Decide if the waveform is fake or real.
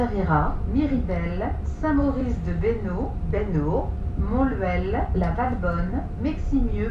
real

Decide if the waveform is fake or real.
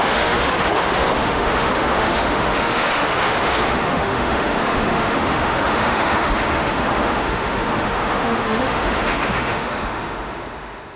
fake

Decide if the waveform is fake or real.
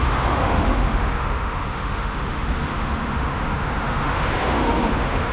fake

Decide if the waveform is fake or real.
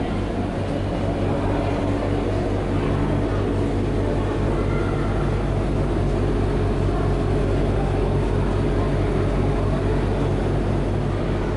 real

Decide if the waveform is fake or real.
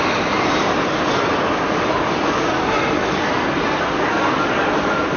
real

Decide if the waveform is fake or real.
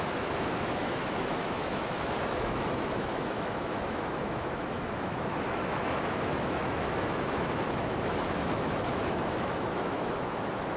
fake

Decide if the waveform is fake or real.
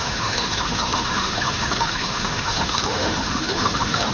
fake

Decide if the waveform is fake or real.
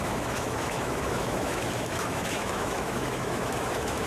fake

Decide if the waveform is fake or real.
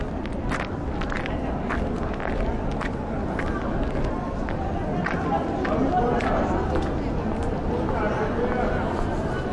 real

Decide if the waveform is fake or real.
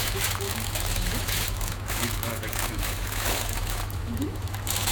fake